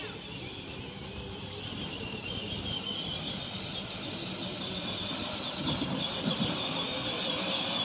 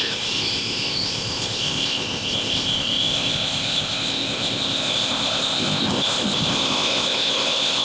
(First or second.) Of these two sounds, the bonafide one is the first